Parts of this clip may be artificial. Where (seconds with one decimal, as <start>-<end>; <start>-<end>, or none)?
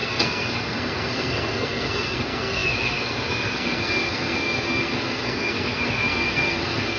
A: 0.0-7.0